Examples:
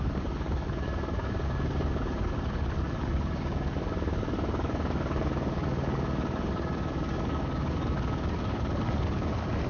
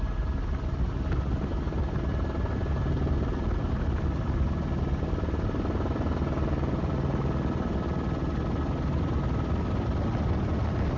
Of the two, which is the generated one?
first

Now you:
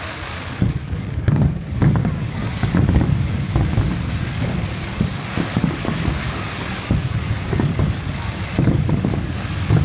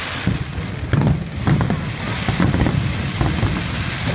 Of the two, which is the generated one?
first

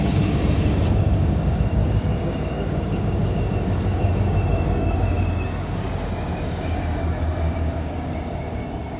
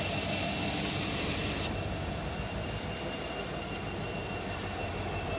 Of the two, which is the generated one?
first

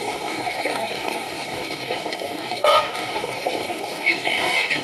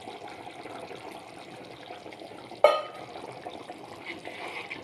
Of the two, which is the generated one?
first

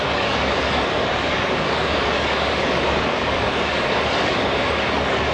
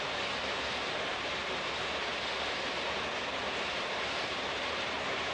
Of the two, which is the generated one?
first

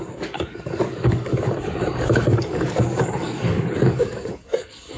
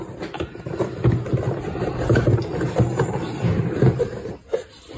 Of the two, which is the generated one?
first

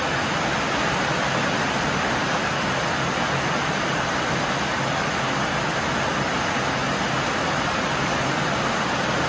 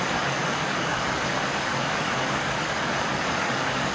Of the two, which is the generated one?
second